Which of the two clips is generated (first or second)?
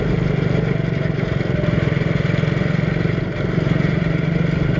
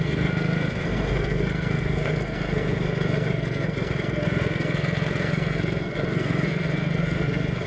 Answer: second